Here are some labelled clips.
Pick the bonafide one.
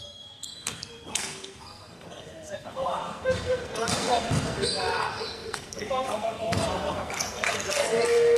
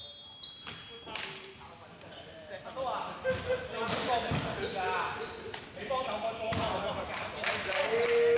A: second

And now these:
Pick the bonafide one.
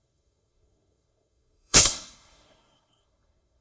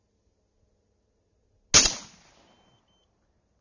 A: second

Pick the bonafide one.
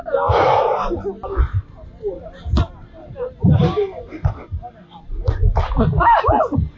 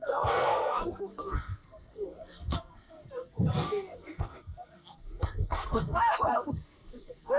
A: first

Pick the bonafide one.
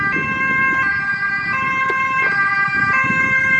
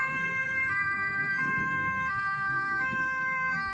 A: first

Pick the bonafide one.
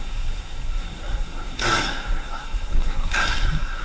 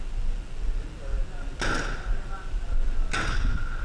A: second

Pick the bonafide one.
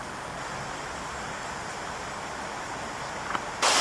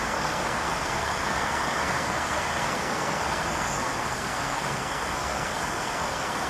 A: first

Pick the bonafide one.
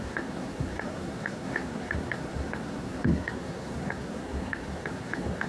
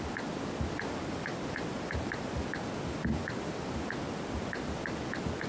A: second